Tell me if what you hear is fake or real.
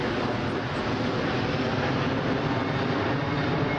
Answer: real